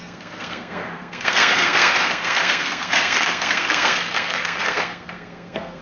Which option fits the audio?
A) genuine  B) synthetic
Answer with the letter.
B